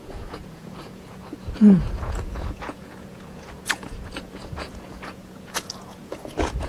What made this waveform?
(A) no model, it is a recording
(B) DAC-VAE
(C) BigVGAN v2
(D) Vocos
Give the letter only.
D